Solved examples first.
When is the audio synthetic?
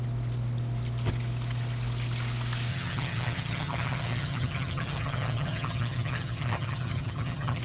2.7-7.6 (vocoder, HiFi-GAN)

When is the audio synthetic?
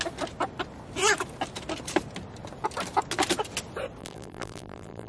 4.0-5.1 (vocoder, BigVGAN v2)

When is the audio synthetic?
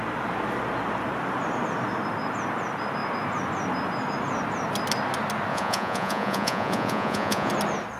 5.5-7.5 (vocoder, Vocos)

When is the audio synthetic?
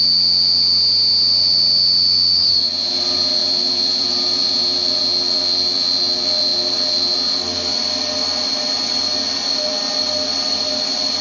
none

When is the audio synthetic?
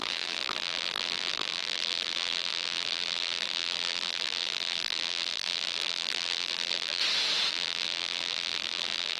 0.0-7.0 (vocoder, BigVGAN v2); 7.5-9.2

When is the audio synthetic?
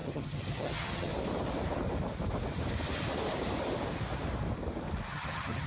0.0-1.1 (vocoder, HiFi-GAN); 5.1-5.7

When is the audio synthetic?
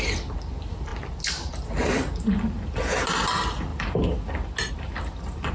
none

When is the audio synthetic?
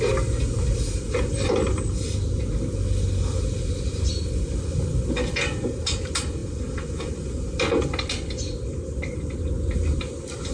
none